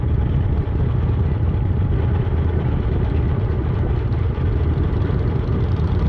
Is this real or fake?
fake